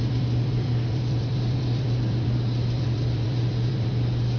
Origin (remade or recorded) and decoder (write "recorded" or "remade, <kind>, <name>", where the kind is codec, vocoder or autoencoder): remade, vocoder, BigVGAN v2